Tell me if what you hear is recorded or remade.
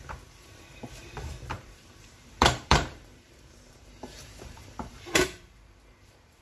remade